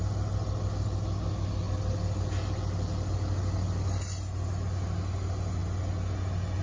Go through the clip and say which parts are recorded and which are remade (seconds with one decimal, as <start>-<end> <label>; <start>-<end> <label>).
0.0-6.6 recorded